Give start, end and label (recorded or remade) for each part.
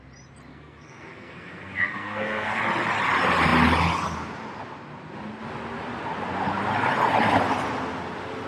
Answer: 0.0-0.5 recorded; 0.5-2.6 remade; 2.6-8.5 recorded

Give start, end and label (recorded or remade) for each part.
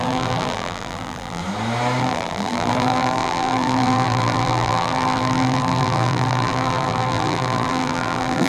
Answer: 0.0-1.4 remade; 1.4-2.0 recorded; 2.0-8.5 remade